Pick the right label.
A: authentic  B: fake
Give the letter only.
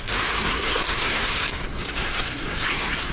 B